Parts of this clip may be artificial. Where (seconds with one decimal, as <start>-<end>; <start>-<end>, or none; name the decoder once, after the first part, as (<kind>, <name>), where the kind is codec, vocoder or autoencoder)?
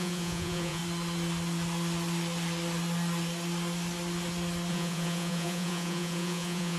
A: 0.0-0.8 (vocoder, Vocos); 4.7-6.8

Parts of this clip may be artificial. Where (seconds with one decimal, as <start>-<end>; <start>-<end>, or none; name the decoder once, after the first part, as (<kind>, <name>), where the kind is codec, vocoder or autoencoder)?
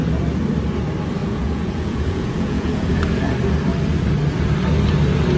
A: 1.2-2.9 (vocoder, Vocos)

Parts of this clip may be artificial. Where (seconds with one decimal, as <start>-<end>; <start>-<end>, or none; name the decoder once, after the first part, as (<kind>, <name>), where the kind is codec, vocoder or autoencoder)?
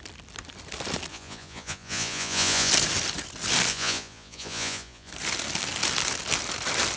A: 1.1-2.7 (vocoder, Vocos); 3.7-5.1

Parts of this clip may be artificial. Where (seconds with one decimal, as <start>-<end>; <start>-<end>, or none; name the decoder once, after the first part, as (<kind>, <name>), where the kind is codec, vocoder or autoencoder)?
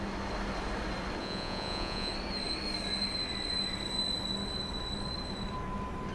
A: 1.2-2.1 (vocoder, Vocos)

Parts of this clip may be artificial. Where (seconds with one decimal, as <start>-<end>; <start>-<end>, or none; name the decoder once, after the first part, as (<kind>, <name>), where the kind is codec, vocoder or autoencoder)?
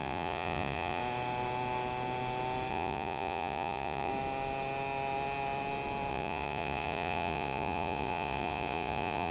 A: 0.0-1.0 (vocoder, Vocos); 2.7-4.1; 6.1-9.3